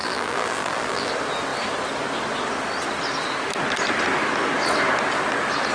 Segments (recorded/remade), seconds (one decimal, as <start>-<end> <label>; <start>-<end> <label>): 0.0-1.1 remade; 1.1-5.7 recorded